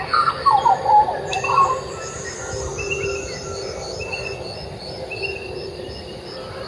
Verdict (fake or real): real